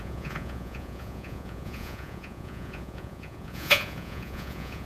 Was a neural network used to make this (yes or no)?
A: yes